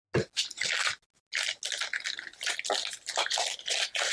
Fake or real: real